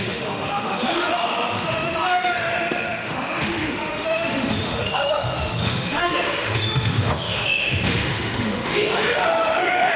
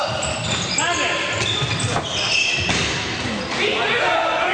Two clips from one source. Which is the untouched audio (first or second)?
second